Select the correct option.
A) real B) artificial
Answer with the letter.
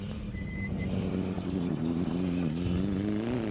A